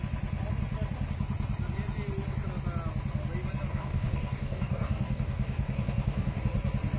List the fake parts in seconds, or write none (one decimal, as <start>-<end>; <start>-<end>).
3.7-6.4